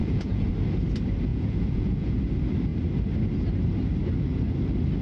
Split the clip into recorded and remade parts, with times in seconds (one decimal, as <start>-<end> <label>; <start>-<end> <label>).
0.0-0.5 remade; 0.5-1.3 recorded; 1.3-2.2 remade; 2.2-5.0 recorded